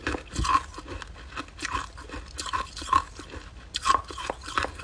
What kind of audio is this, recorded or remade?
recorded